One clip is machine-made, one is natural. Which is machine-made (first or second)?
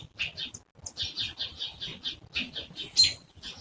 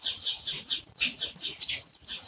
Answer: second